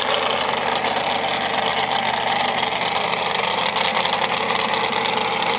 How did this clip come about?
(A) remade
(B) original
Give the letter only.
B